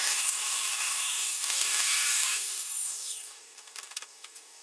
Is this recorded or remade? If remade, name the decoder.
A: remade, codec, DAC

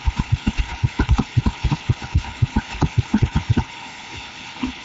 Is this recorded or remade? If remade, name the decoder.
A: remade, codec, HILCodec